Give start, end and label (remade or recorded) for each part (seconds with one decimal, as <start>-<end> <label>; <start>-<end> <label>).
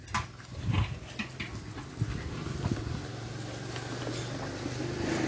0.0-5.3 recorded